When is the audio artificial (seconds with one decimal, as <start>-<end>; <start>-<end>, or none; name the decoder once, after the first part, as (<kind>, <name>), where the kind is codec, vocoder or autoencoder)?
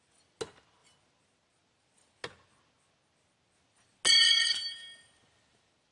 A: none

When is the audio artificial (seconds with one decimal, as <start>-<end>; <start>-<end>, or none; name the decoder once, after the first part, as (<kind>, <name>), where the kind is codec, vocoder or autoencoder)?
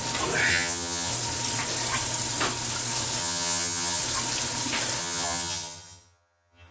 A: 0.5-1.1 (vocoder, HiFi-GAN); 3.2-4.0; 5.0-6.7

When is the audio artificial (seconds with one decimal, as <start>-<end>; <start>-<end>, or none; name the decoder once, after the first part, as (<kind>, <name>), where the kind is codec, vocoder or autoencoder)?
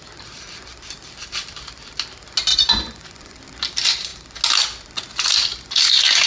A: 2.5-3.4 (vocoder, Vocos)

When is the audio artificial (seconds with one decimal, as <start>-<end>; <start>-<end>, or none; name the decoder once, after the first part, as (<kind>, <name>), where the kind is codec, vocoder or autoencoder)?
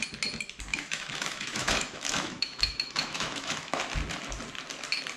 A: 0.7-3.8 (autoencoder, DAC-VAE)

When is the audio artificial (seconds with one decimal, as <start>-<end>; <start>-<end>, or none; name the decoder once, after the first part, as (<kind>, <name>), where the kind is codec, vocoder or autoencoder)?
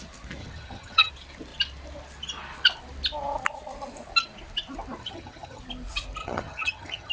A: 0.4-1.1 (vocoder, HiFi-GAN); 5.0-5.6; 6.2-7.1